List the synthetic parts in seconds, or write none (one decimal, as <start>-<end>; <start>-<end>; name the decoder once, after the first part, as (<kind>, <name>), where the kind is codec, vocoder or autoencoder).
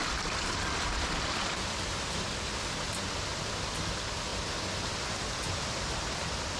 0.0-6.6 (vocoder, BigVGAN v2)